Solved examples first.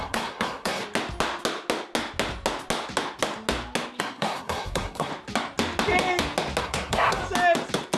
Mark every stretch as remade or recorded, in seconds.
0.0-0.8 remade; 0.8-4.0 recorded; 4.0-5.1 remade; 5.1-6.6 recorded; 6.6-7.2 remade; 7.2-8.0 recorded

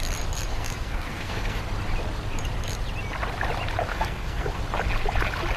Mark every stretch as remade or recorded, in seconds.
0.0-0.5 recorded; 0.5-1.6 remade; 1.6-3.9 recorded; 3.9-4.6 remade; 4.6-5.6 recorded